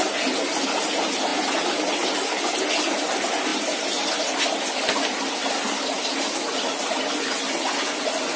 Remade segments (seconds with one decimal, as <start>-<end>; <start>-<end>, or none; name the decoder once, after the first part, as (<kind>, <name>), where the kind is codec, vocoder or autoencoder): none